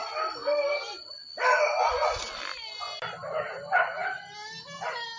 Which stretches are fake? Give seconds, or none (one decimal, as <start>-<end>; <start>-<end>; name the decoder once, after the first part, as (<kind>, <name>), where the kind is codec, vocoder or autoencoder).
none